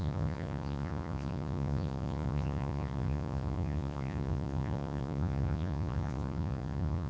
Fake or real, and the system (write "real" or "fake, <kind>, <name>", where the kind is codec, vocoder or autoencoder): fake, vocoder, Vocos